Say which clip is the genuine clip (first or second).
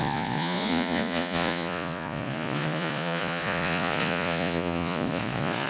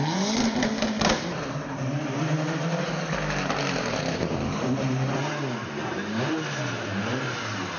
second